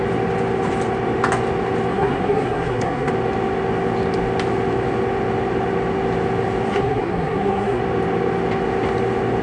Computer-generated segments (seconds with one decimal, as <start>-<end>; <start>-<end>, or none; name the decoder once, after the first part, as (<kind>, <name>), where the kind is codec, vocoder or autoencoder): 1.9-3.1 (codec, SNAC); 6.7-7.8